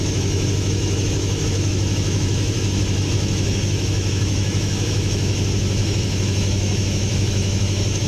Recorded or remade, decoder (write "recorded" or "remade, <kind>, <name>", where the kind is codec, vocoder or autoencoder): remade, autoencoder, DAC-VAE